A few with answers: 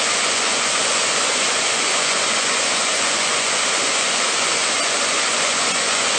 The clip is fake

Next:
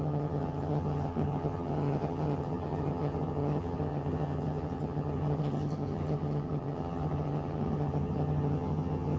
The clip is fake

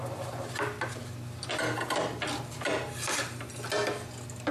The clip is real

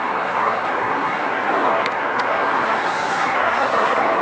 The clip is fake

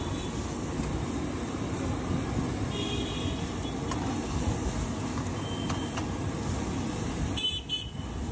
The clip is real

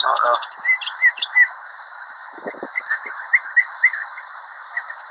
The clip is fake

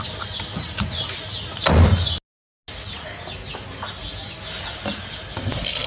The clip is real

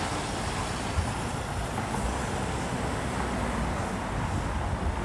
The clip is real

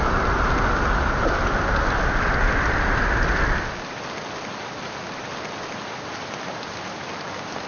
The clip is real